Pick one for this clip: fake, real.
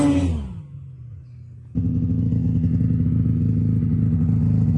real